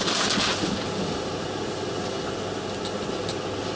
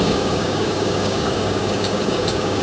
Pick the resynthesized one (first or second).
second